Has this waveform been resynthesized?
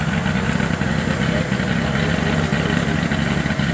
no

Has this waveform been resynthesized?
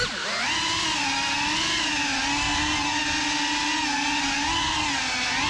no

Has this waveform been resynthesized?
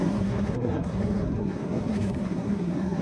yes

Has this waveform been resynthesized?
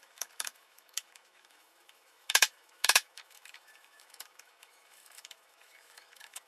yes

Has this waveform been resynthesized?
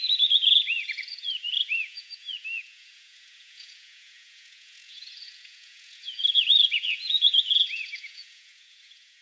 yes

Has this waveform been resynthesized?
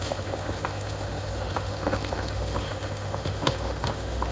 yes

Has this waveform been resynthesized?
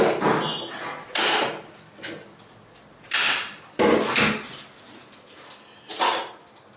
no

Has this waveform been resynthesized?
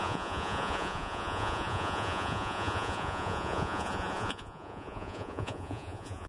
yes